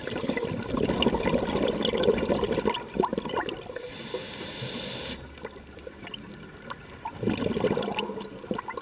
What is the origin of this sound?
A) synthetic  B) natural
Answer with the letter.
B